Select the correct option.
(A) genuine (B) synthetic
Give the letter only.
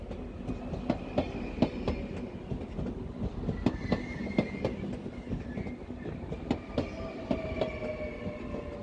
A